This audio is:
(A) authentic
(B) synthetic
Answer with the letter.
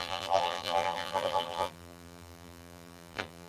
B